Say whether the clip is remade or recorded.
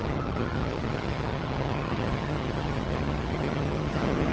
remade